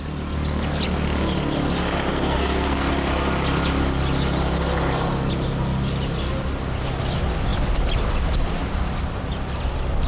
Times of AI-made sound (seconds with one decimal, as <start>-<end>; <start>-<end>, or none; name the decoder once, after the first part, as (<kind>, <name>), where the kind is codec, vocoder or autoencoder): 2.1-2.9 (codec, SNAC)